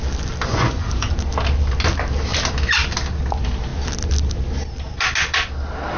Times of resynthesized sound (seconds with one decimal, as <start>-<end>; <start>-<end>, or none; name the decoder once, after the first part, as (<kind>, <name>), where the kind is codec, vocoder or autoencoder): 0.5-1.1 (vocoder, Vocos)